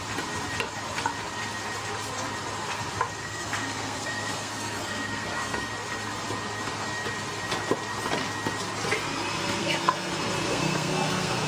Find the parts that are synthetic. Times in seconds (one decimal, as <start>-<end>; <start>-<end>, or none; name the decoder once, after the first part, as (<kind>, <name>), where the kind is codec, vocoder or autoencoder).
3.2-5.7 (codec, SNAC); 9.6-10.1; 10.5-11.5